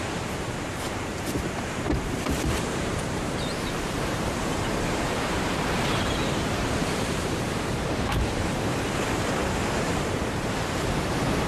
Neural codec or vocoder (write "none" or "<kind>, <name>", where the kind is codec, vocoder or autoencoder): vocoder, BigVGAN v2